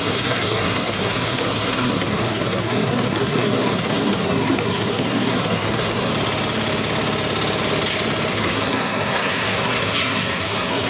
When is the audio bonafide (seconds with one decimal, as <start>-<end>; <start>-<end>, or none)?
6.1-8.3